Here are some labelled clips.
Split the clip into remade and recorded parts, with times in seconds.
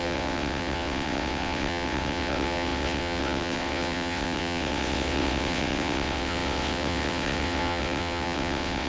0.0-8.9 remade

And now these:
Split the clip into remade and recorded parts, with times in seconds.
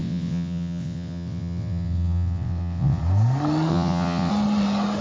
0.0-3.0 remade; 3.0-3.7 recorded; 3.7-4.3 remade; 4.3-5.0 recorded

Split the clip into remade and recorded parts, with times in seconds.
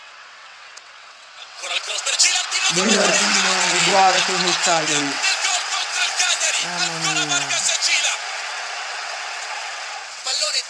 0.0-6.6 remade; 6.6-7.8 recorded; 7.8-10.7 remade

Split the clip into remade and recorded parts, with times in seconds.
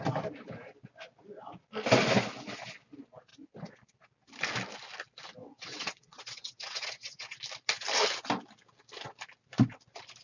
0.0-5.4 recorded; 5.4-7.4 remade; 7.4-10.2 recorded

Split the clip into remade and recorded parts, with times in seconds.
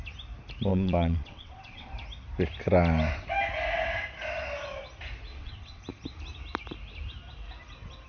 0.0-0.7 recorded; 0.7-1.9 remade; 1.9-5.3 recorded; 5.3-5.8 remade; 5.8-8.1 recorded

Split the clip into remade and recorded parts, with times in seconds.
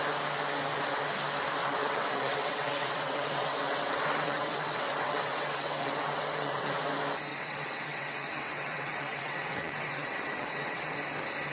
0.0-1.6 recorded; 1.6-6.8 remade; 6.8-7.3 recorded; 7.3-10.9 remade; 10.9-11.5 recorded